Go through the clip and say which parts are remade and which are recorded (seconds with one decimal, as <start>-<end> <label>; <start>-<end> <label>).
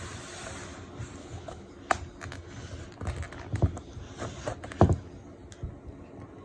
0.0-1.2 recorded; 1.2-1.7 remade; 1.7-6.4 recorded